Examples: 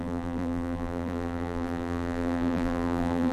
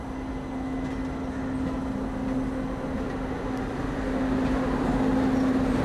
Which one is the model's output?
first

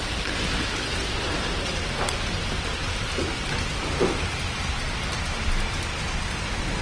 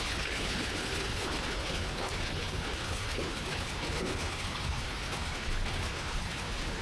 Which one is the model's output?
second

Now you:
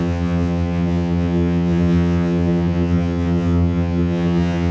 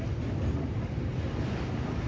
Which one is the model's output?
first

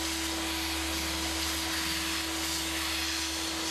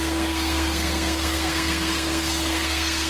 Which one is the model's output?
second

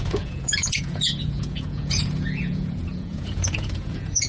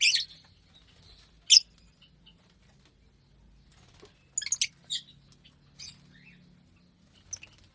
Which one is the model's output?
first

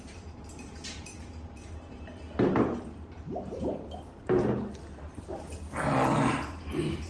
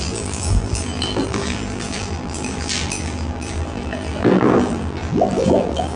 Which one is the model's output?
second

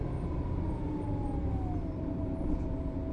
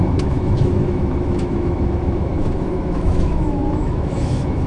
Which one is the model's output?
second